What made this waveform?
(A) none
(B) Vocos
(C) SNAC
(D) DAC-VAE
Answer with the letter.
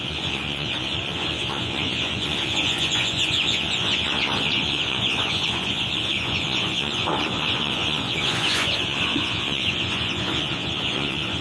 B